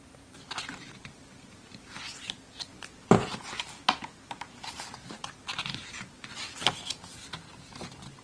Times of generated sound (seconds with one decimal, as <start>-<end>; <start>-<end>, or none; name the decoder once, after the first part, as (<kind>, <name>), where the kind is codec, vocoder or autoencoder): 2.7-4.9 (vocoder, BigVGAN v2); 5.4-6.1